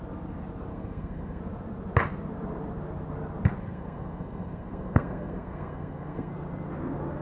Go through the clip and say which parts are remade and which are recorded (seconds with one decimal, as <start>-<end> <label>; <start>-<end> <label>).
0.0-0.7 recorded; 0.7-1.4 remade; 1.4-3.6 recorded; 3.6-6.3 remade; 6.3-7.2 recorded